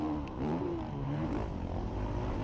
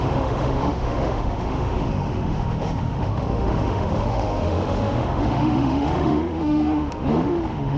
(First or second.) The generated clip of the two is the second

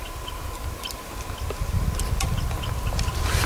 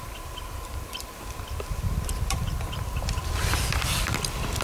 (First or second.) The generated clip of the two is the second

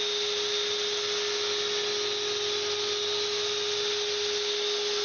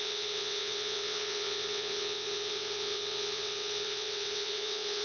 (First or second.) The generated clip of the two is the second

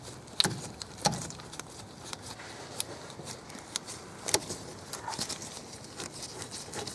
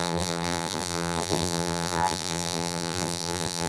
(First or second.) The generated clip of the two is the second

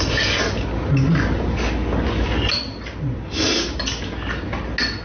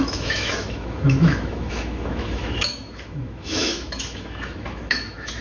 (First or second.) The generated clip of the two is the second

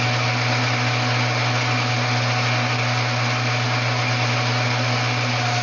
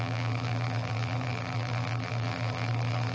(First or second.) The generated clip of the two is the second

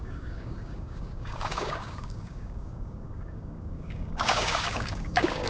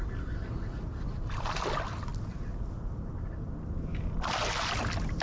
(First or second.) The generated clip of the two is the first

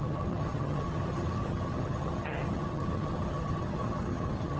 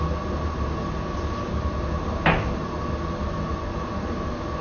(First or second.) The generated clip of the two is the first